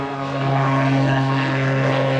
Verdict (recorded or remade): remade